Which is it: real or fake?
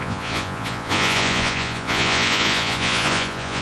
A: fake